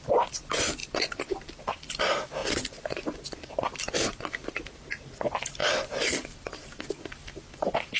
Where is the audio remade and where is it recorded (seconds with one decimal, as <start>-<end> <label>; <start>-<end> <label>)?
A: 0.0-8.0 recorded